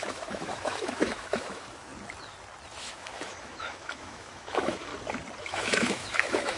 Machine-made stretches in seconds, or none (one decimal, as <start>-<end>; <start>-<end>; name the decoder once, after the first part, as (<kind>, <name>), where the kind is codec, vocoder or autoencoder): 0.0-1.9 (autoencoder, DAC-VAE); 2.8-4.9; 5.4-6.6